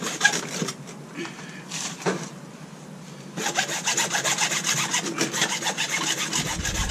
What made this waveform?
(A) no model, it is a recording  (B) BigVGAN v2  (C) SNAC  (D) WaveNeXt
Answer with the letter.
A